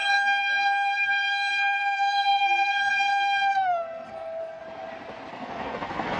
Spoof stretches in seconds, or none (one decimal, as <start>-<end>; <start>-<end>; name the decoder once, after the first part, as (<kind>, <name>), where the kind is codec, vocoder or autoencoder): 0.0-4.6 (codec, SNAC); 5.3-6.2